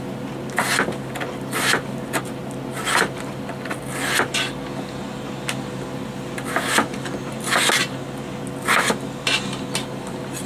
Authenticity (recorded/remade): recorded